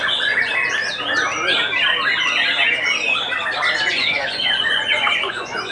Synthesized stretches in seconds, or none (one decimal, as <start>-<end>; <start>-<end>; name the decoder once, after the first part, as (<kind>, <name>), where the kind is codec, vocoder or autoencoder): 0.0-0.5 (vocoder, Vocos); 3.9-5.7